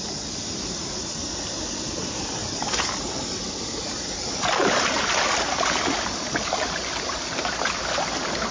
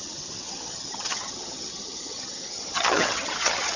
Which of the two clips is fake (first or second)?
second